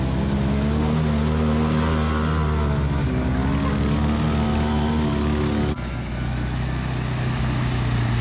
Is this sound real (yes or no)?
yes